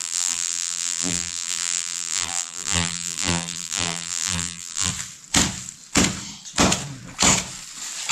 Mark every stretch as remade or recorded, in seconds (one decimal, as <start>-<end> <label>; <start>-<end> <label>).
0.0-4.9 remade; 4.9-8.1 recorded